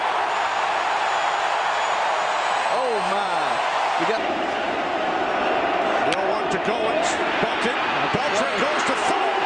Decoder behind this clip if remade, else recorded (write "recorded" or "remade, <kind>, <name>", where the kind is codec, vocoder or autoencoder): remade, vocoder, BigVGAN v2